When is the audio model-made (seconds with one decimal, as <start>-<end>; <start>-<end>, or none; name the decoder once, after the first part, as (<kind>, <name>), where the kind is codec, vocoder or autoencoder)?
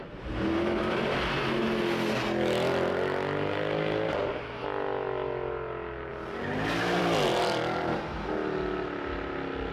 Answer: none